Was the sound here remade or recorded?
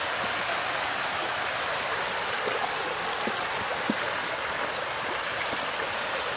recorded